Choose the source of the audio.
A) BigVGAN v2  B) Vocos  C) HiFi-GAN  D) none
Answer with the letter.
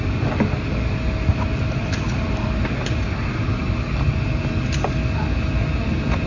D